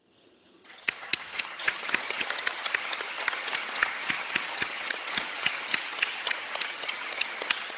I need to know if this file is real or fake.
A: fake